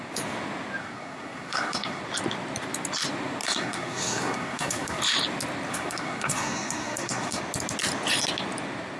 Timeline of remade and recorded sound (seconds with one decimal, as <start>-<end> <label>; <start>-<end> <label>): 0.0-0.8 recorded; 0.8-2.0 remade; 2.0-3.4 recorded; 3.4-5.0 remade; 5.0-5.7 recorded; 5.7-7.4 remade; 7.4-9.0 recorded